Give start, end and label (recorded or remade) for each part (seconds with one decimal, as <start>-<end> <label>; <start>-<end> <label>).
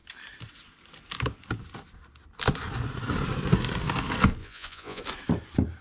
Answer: 0.0-4.4 recorded; 4.4-5.0 remade; 5.0-5.8 recorded